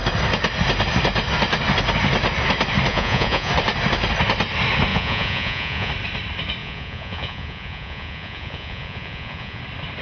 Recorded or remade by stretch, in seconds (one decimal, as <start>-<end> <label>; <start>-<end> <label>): 0.0-2.9 recorded; 2.9-3.5 remade; 3.5-4.9 recorded; 4.9-5.9 remade; 5.9-6.6 recorded; 6.6-9.6 remade; 9.6-10.0 recorded